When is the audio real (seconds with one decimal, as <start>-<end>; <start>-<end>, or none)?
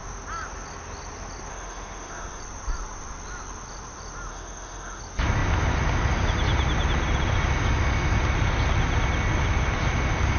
0.0-1.5; 2.4-4.3; 5.0-10.4